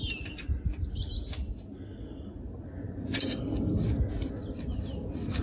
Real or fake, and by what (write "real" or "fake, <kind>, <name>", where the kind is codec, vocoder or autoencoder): real